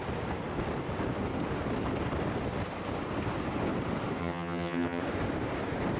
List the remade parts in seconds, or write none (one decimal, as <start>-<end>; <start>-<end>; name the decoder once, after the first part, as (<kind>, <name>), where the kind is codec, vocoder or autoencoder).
4.2-5.0 (vocoder, HiFi-GAN)